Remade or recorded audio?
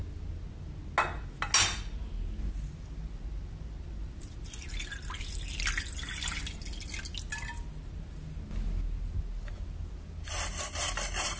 recorded